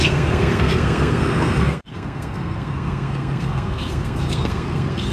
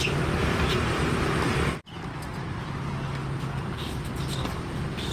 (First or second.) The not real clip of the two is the first